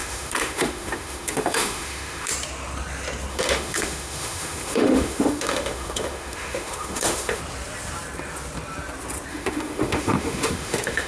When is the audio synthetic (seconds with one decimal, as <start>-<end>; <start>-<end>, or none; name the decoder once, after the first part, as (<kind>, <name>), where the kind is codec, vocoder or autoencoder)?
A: 0.0-2.3 (autoencoder, DAC-VAE); 3.3-7.4; 9.3-11.1